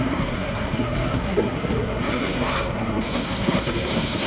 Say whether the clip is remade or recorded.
remade